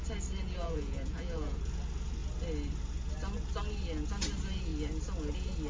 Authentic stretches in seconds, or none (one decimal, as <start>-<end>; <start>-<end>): 0.0-0.6; 1.6-5.7

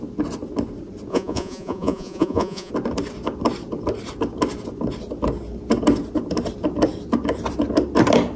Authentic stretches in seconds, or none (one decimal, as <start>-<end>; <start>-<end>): 0.0-1.1; 2.7-8.4

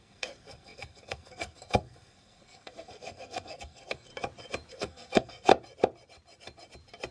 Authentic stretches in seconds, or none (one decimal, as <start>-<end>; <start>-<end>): 4.1-4.7; 5.5-7.1

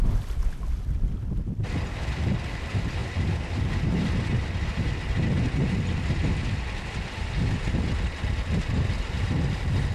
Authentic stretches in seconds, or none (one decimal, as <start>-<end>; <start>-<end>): 0.0-9.9

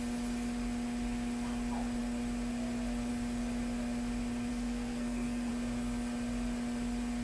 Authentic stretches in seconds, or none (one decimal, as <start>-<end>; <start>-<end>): 0.0-4.5; 5.5-7.2

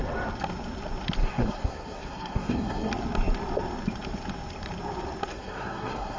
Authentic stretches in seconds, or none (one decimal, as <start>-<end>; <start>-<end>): 0.0-1.2; 2.9-5.3